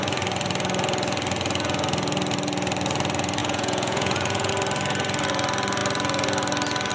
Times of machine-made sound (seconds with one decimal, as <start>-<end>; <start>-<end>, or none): 3.4-4.5